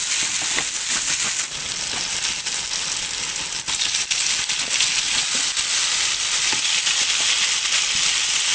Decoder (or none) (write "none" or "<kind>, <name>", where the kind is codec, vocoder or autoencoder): none